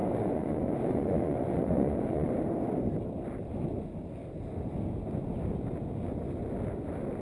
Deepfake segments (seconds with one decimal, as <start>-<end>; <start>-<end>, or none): 0.0-2.3